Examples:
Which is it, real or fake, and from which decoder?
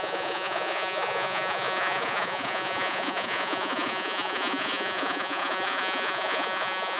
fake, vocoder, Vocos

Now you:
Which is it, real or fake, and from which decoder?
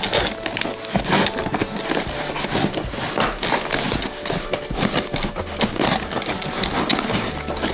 real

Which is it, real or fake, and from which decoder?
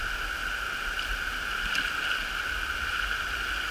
real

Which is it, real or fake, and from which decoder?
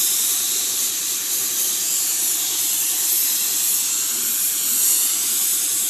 real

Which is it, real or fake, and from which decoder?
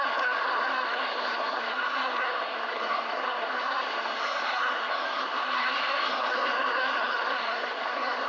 fake, codec, SNAC